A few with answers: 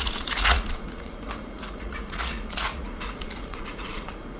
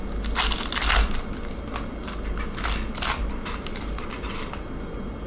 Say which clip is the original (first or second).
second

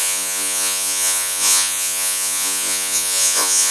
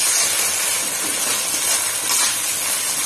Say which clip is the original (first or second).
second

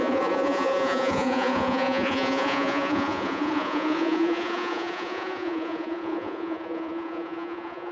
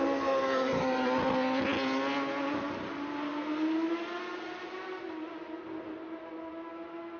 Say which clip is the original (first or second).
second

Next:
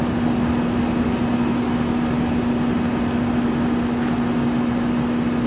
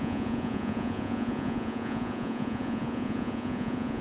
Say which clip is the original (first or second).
first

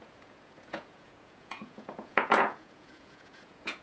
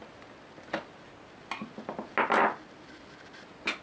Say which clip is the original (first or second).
second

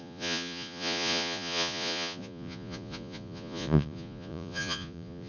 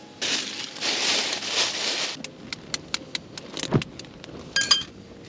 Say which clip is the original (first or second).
second